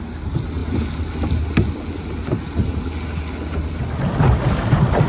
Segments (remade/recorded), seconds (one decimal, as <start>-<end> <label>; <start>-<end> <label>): 0.0-5.1 recorded